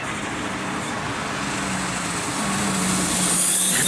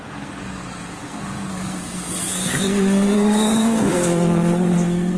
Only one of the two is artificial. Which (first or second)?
second